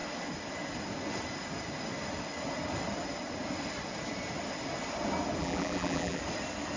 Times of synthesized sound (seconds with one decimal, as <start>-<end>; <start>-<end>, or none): 5.4-6.2